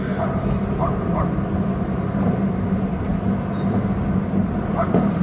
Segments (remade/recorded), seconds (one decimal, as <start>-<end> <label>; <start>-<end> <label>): 0.0-5.2 recorded